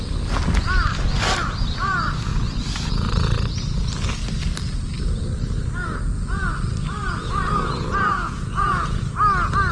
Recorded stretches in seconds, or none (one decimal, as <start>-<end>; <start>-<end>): 0.0-7.0; 9.0-9.7